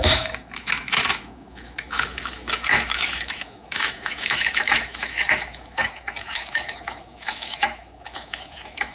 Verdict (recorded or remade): remade